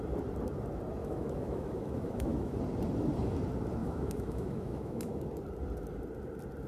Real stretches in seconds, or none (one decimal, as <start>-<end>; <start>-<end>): 0.0-1.0; 2.6-3.8; 5.2-6.7